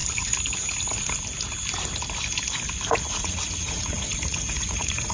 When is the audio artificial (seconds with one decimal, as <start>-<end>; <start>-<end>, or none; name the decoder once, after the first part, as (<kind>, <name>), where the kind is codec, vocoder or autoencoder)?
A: 3.1-5.1 (vocoder, Vocos)